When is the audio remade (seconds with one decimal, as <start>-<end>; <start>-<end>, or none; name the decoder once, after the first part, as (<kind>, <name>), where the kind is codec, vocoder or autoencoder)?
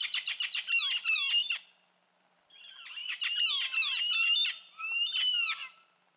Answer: 0.0-1.4 (vocoder, BigVGAN v2); 2.2-3.0; 4.8-6.2